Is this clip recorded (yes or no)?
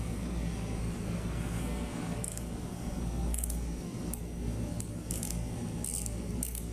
no